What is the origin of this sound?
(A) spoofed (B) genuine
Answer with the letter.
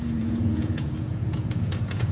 A